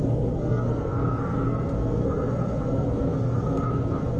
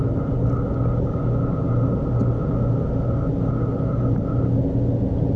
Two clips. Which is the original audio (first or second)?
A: second